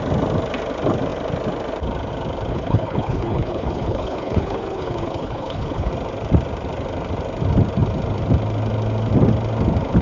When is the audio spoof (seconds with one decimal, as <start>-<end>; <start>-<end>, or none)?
2.5-5.9